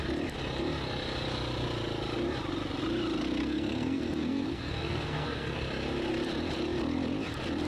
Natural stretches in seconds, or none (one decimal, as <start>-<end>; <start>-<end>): 0.0-3.4; 5.6-7.7